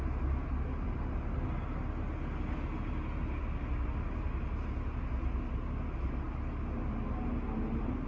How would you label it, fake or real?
real